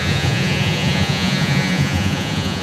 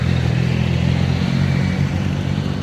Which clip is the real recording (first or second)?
second